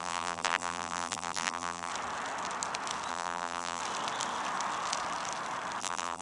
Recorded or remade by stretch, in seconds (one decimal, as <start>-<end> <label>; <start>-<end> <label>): 0.0-1.9 remade; 1.9-3.1 recorded; 3.1-3.8 remade; 3.8-5.8 recorded; 5.8-6.2 remade